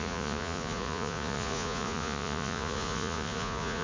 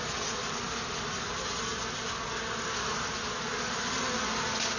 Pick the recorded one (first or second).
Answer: second